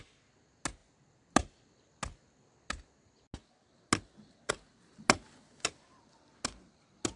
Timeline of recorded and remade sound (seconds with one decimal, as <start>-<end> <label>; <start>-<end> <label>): 0.0-7.2 recorded